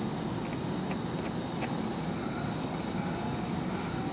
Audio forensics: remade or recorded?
recorded